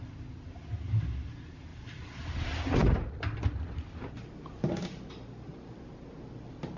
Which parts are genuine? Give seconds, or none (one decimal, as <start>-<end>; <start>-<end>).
0.0-6.8